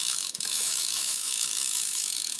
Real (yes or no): no